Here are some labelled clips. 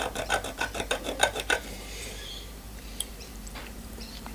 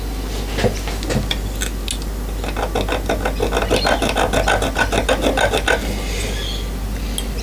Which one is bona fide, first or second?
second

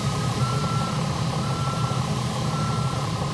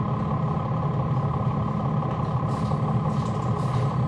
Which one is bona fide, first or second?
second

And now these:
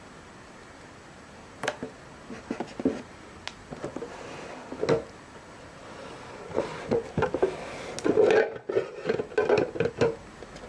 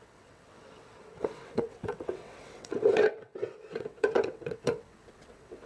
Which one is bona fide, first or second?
first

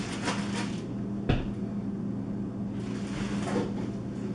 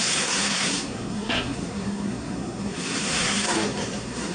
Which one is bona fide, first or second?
first